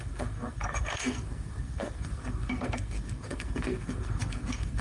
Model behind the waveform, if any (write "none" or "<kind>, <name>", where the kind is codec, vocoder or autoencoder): codec, SNAC